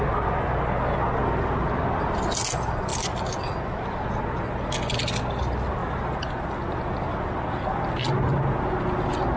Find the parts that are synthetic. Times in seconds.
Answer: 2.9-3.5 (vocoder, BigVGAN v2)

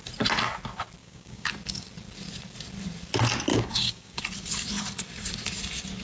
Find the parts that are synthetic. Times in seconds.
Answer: 1.0-1.5 (codec, DAC); 3.5-4.2

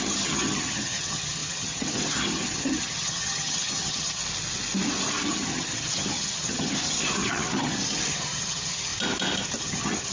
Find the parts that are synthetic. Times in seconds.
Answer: 0.0-4.2 (vocoder, HiFi-GAN); 5.3-8.9; 9.6-10.1

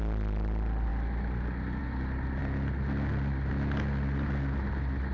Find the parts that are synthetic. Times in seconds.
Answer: none

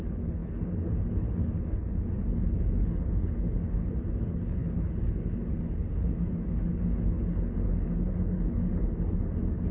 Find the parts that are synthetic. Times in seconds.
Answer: 0.0-9.7 (codec, HILCodec)

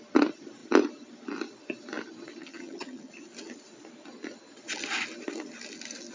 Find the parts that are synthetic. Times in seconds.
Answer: 2.4-3.1 (vocoder, HiFi-GAN)

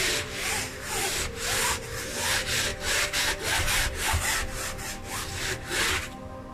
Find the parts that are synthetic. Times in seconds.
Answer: 0.0-2.7 (vocoder, BigVGAN v2)

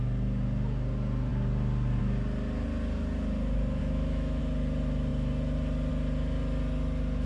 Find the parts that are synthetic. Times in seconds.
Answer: 3.8-4.4 (autoencoder, DAC-VAE)